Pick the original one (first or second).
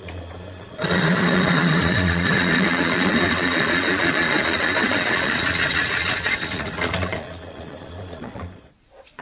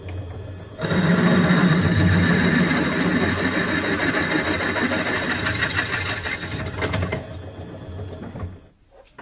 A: second